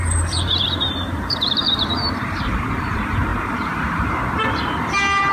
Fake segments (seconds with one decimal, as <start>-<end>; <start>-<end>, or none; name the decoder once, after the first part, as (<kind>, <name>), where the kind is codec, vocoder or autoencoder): 0.0-5.3 (vocoder, BigVGAN v2)

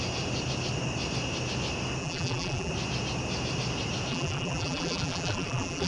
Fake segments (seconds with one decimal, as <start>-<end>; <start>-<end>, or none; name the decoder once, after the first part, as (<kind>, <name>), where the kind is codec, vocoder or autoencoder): 2.0-2.7 (vocoder, BigVGAN v2); 4.1-5.9

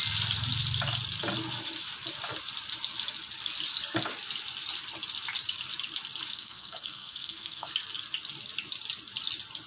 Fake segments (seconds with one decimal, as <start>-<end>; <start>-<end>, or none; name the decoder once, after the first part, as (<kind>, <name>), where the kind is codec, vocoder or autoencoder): 6.3-7.7 (codec, SNAC)

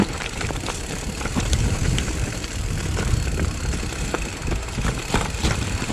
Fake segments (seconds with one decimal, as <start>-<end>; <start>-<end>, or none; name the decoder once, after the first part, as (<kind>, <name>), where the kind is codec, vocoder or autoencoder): 0.0-3.3 (vocoder, BigVGAN v2); 5.1-5.9

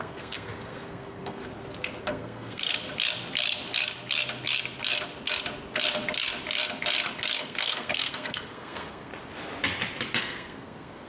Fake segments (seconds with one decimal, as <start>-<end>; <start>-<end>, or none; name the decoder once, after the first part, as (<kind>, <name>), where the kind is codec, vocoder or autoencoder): 0.0-1.4 (codec, SNAC); 2.0-2.7; 7.4-9.1; 10.2-11.1

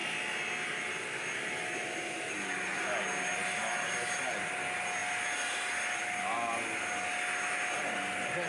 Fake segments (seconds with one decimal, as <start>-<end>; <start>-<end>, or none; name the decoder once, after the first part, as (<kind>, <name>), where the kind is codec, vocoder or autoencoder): none

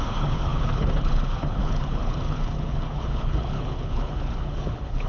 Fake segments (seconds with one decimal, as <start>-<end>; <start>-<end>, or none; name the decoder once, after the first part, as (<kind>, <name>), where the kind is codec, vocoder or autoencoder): 0.0-5.1 (codec, HILCodec)

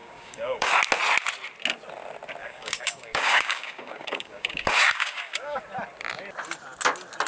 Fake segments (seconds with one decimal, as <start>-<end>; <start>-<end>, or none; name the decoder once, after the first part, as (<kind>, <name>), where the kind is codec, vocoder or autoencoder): 0.0-0.7 (codec, DAC); 2.4-5.6